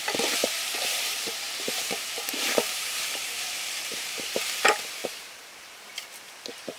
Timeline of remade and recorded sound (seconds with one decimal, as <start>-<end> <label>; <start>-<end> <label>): 0.0-0.4 recorded; 0.4-4.5 remade; 4.5-5.0 recorded; 5.0-5.8 remade; 5.8-6.8 recorded

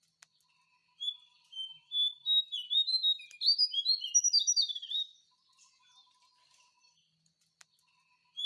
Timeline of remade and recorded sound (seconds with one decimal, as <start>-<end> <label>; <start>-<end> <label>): 0.0-8.5 recorded